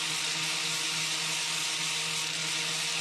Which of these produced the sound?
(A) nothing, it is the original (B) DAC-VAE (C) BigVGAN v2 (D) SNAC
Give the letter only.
A